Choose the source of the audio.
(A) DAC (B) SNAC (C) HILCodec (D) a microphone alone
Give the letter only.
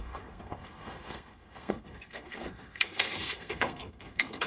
B